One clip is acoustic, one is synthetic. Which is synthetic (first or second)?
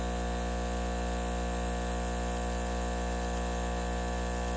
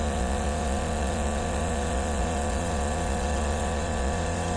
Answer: second